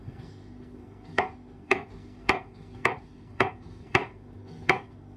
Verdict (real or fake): fake